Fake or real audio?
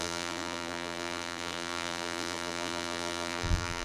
fake